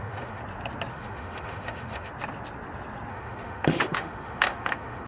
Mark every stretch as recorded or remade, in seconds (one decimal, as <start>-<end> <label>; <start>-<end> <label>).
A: 0.0-0.4 remade; 0.4-0.9 recorded; 0.9-2.1 remade; 2.1-3.1 recorded; 3.1-5.1 remade